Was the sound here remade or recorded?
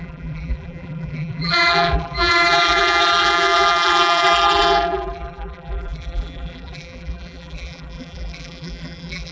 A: remade